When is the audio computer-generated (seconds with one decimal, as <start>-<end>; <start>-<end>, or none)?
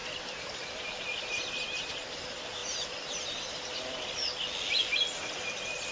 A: none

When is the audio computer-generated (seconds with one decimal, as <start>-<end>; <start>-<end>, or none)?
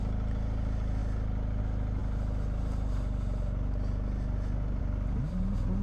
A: none